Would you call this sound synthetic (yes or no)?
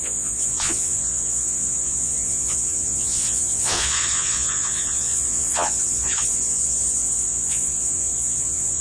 yes